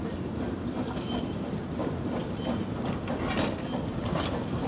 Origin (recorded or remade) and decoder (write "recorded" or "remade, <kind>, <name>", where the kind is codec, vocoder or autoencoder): recorded